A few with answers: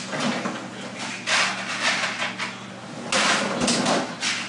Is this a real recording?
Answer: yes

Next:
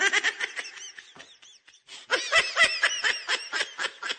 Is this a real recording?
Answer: yes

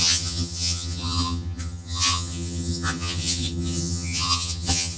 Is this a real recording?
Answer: no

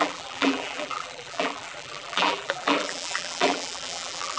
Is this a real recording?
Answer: no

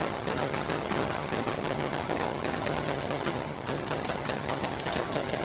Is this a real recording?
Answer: no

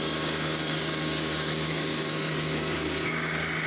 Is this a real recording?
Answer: no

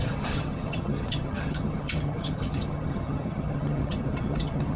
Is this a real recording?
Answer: no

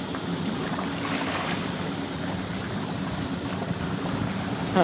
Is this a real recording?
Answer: yes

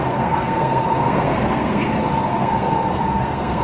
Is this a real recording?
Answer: no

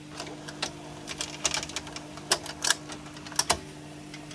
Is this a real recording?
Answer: yes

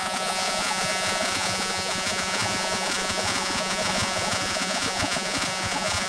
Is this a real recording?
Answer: no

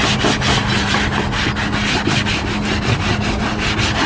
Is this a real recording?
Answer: yes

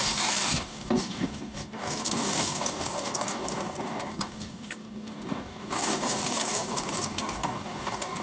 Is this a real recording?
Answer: no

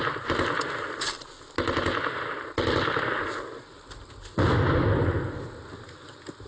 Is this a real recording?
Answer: yes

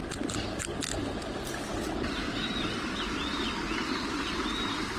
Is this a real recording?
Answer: yes